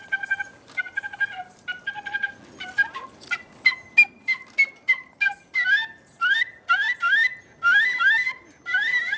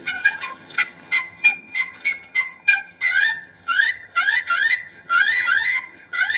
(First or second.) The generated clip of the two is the second